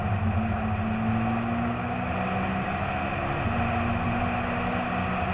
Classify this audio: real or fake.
real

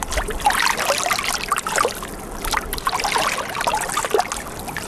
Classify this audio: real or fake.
real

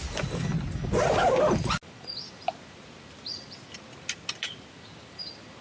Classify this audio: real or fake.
real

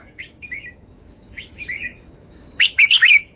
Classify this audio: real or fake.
fake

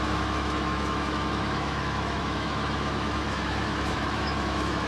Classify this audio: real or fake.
fake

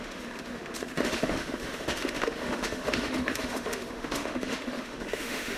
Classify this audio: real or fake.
fake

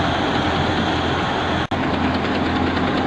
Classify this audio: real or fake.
real